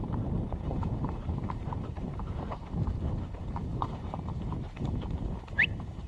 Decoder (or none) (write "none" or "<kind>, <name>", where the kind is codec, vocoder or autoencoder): vocoder, BigVGAN v2